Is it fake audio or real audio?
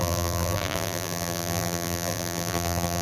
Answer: fake